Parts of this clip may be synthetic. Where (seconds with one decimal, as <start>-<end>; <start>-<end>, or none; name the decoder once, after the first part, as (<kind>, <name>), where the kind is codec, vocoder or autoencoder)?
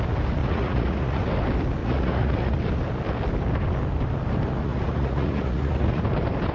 0.4-1.3 (vocoder, Vocos); 1.8-2.6; 4.6-6.0